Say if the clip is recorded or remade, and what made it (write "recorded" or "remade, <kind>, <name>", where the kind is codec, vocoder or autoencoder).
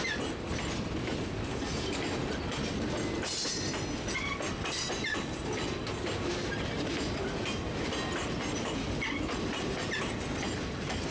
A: recorded